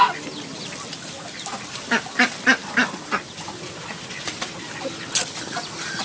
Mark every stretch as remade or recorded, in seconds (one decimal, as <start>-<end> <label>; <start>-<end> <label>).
0.0-6.0 recorded